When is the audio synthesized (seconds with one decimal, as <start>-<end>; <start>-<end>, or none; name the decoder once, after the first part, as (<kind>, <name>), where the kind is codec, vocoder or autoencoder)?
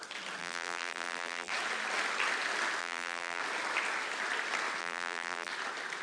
0.4-1.5 (vocoder, BigVGAN v2); 2.8-3.4; 4.8-5.5